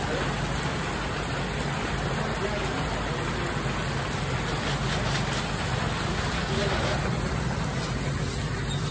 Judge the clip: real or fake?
real